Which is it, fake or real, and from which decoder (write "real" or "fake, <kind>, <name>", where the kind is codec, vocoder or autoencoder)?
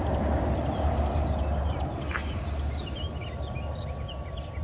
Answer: real